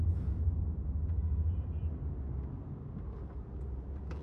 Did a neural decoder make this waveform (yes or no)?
no